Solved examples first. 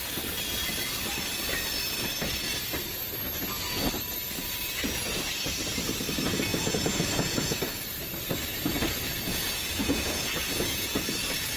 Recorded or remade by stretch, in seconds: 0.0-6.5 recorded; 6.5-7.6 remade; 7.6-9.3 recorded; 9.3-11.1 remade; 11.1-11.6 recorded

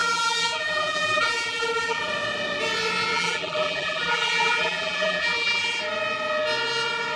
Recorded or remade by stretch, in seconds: 0.0-2.1 remade; 2.1-3.1 recorded; 3.1-5.8 remade; 5.8-7.2 recorded

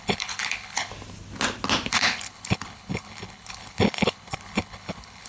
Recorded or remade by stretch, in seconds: 0.0-0.9 remade; 0.9-1.9 recorded; 1.9-5.3 remade

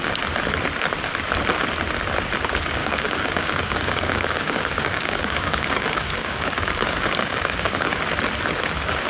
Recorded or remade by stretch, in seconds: 0.0-2.8 recorded; 2.8-8.0 remade; 8.0-9.1 recorded

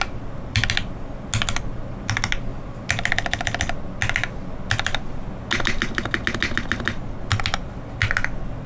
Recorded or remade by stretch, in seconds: 0.0-2.5 recorded; 2.5-3.1 remade; 3.1-8.7 recorded

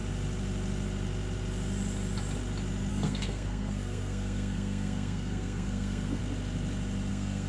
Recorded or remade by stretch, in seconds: 0.0-2.9 recorded; 2.9-6.2 remade; 6.2-7.1 recorded; 7.1-7.5 remade

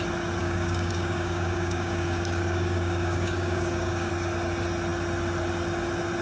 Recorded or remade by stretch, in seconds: 0.0-0.4 recorded; 0.4-4.1 remade; 4.1-6.2 recorded

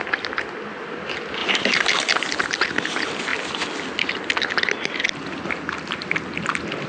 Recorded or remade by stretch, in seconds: 0.0-6.9 recorded